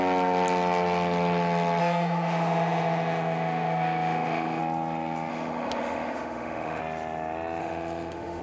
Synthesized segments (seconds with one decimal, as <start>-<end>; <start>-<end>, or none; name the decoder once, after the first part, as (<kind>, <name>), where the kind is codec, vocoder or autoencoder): 1.8-4.6 (autoencoder, DAC-VAE); 5.3-6.8; 7.6-8.4